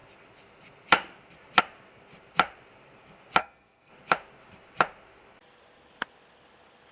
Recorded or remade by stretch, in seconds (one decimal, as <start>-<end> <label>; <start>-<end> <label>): 0.0-3.4 recorded; 3.4-3.9 remade; 3.9-6.9 recorded